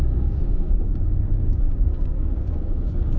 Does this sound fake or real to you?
fake